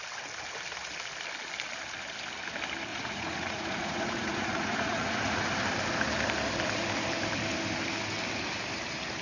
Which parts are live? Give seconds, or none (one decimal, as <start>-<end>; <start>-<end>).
0.0-2.9; 5.4-9.2